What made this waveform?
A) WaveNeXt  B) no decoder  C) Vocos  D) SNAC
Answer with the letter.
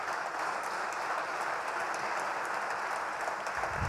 B